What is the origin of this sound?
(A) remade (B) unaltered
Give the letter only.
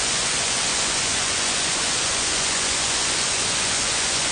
A